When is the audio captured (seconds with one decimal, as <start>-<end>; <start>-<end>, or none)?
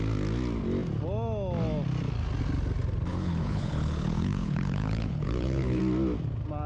0.0-3.1; 5.8-6.7